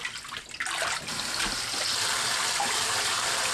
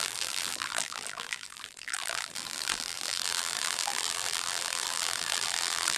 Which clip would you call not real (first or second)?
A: second